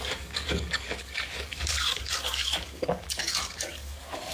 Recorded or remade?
remade